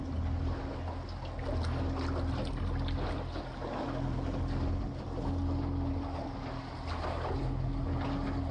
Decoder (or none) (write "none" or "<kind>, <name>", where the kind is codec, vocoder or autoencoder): none